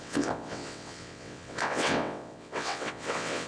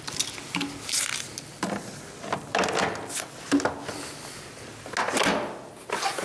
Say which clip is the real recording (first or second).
second